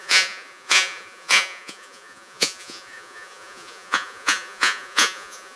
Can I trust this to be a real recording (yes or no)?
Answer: no